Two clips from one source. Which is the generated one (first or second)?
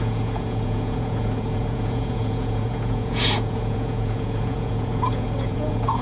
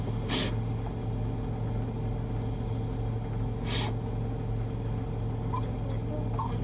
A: first